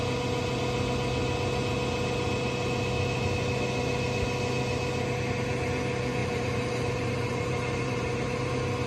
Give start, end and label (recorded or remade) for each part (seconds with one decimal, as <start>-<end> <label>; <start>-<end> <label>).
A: 0.0-6.2 recorded; 6.2-8.5 remade; 8.5-8.9 recorded